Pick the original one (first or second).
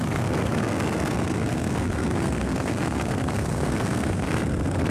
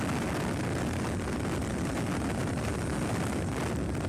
second